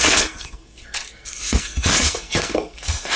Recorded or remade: remade